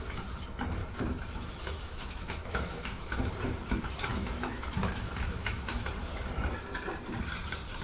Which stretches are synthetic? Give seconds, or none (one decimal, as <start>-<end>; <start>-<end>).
0.8-3.3; 4.1-5.9